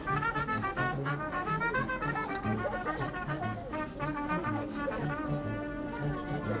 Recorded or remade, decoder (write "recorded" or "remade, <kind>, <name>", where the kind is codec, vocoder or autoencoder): remade, codec, DAC